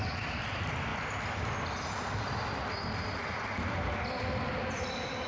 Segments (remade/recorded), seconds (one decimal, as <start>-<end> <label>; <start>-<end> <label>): 0.0-5.3 recorded